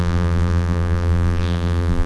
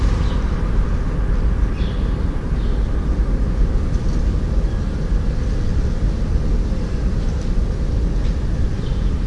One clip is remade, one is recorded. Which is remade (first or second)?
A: first